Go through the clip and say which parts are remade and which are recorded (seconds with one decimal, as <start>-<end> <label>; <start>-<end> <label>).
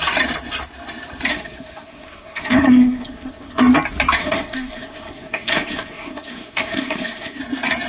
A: 0.0-1.3 recorded; 1.3-3.6 remade; 3.6-4.2 recorded; 4.2-7.4 remade; 7.4-7.9 recorded